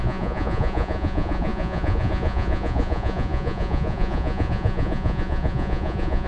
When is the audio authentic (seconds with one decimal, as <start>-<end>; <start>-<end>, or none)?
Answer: none

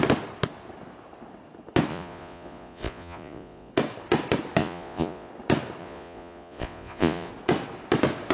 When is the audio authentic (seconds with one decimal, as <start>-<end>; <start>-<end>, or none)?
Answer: 0.0-1.9; 3.7-4.6; 5.3-5.8; 7.3-8.3

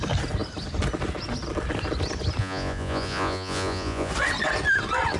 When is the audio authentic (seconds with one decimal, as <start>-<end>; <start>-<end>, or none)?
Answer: 0.0-2.4; 4.1-5.2

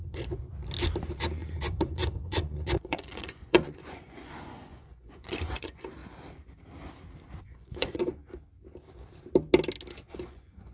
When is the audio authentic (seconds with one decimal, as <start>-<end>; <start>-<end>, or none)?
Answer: 0.4-1.0; 6.0-7.4; 8.2-9.9

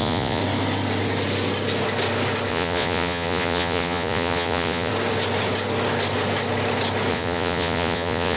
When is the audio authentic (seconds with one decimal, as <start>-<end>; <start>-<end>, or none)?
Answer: 0.4-2.5; 4.9-7.1